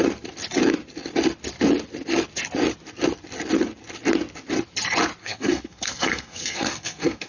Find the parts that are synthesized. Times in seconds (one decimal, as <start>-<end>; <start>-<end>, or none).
5.2-7.3